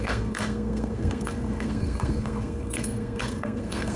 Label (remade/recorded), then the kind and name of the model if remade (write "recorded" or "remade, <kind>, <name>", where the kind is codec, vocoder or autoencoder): remade, codec, SNAC